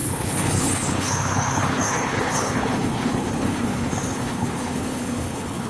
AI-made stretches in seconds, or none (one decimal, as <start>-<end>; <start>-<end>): 0.0-5.7